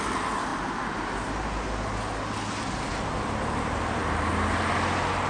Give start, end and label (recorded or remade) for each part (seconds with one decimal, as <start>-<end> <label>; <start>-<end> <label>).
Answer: 0.0-5.3 recorded